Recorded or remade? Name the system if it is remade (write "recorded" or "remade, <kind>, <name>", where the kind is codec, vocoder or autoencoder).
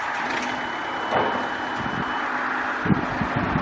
recorded